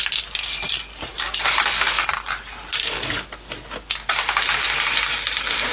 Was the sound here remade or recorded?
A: recorded